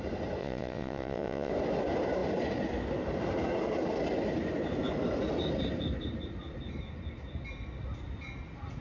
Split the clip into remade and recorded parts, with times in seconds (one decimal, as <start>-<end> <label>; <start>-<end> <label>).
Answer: 0.0-0.4 recorded; 0.4-1.5 remade; 1.5-8.8 recorded